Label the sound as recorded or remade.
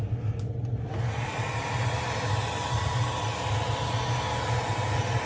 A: recorded